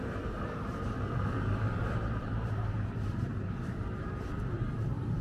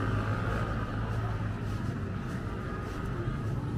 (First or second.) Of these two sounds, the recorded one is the second